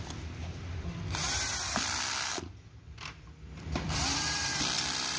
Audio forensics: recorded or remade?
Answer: remade